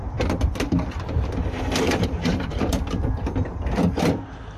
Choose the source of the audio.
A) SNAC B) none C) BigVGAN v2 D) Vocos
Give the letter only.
C